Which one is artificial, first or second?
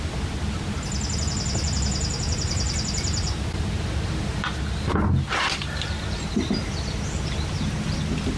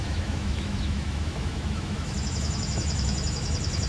second